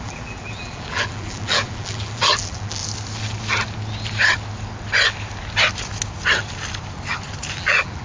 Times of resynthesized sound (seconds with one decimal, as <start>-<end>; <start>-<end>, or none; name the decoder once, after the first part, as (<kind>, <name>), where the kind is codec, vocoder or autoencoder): 0.0-2.8 (vocoder, BigVGAN v2); 7.6-8.0